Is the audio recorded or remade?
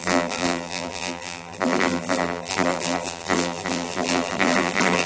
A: remade